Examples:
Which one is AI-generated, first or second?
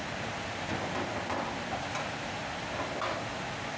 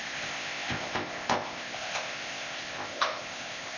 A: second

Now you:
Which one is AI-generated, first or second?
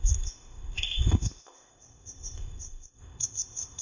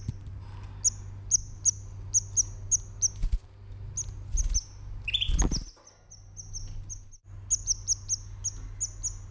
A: first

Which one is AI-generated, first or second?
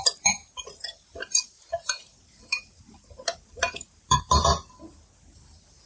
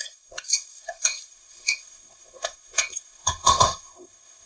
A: second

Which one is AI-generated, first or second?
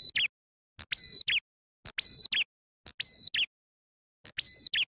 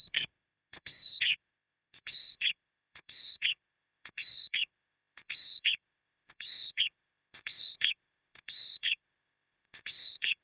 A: second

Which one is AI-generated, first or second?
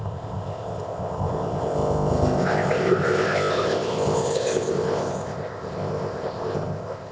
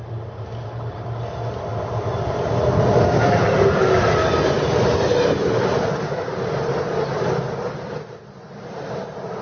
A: first